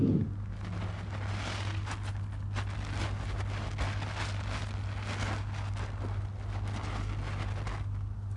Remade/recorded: recorded